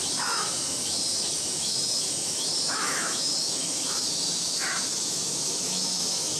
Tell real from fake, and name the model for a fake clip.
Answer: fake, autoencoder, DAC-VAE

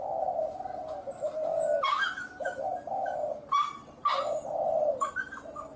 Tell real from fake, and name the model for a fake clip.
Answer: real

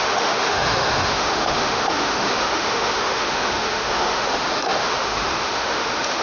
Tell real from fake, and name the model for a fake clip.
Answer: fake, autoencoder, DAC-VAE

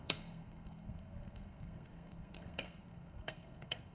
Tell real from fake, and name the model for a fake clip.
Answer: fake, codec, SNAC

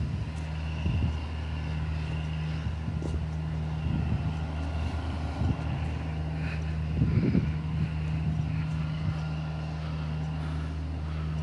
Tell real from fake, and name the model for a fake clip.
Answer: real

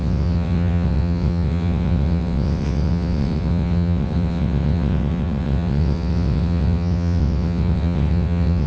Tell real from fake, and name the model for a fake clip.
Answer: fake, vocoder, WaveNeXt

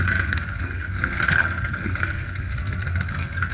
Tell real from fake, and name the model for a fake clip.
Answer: fake, codec, SNAC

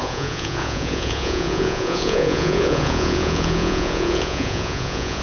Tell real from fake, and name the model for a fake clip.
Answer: fake, vocoder, Vocos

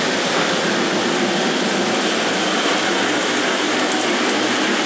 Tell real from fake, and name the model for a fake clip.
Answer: real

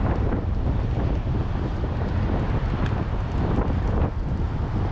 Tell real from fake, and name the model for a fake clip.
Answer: fake, vocoder, BigVGAN v2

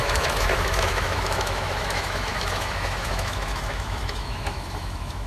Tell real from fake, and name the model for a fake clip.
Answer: fake, autoencoder, DAC-VAE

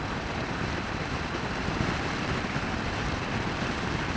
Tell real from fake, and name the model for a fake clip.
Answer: real